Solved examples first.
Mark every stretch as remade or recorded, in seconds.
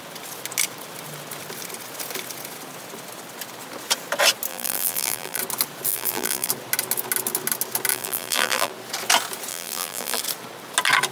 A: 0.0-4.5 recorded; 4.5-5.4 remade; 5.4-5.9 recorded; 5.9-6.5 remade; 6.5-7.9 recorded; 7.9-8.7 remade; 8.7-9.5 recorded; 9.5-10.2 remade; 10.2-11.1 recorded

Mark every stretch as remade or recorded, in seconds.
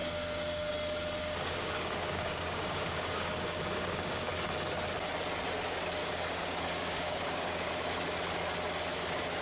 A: 0.0-0.7 remade; 0.7-1.2 recorded; 1.2-4.3 remade; 4.3-6.0 recorded; 6.0-7.7 remade; 7.7-9.4 recorded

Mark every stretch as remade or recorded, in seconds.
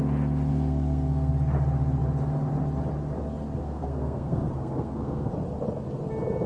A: 0.0-0.5 recorded; 0.5-1.3 remade; 1.3-3.6 recorded; 3.6-5.3 remade; 5.3-6.5 recorded